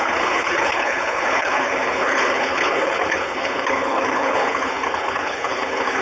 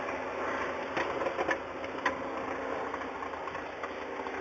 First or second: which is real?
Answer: second